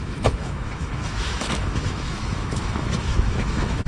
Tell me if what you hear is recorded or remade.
remade